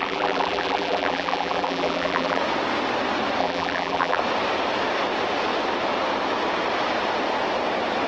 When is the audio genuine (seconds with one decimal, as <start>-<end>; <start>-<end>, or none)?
2.4-3.4; 4.2-8.1

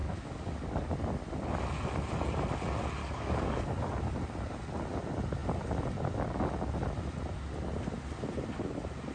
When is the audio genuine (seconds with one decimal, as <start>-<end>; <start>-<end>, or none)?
0.9-3.0; 4.0-9.1

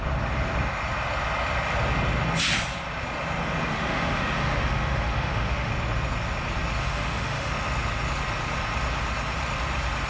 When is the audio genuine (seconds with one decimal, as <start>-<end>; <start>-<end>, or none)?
0.0-3.7; 5.7-6.8; 7.5-10.1

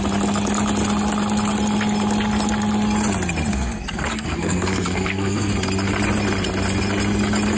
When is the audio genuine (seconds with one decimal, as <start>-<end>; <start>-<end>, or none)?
0.0-3.5; 5.5-7.6

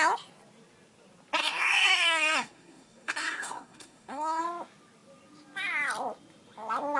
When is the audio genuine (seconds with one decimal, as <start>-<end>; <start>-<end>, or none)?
0.0-1.4; 4.4-7.0

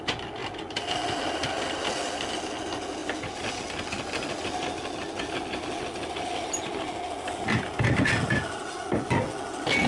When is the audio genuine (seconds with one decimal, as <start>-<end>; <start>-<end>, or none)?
0.0-9.9

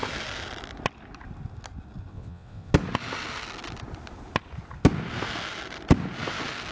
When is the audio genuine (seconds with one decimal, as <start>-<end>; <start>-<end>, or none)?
0.0-2.1; 2.7-6.7

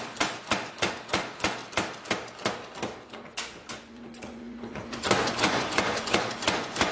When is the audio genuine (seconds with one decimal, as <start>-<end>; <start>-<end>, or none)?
1.6-3.0